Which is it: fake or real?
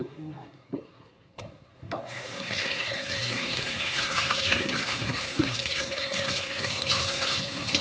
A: fake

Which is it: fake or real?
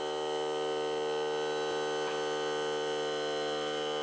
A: real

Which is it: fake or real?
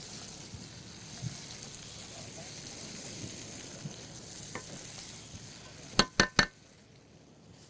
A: real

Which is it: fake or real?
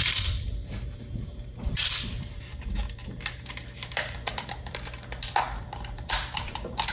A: fake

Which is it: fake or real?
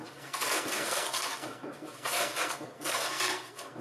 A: fake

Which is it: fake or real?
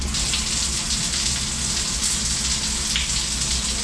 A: real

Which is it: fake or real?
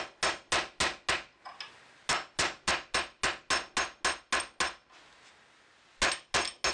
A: real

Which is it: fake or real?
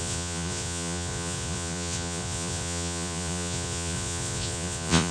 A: fake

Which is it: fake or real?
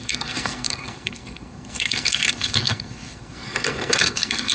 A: fake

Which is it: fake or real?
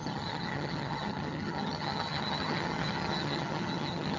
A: fake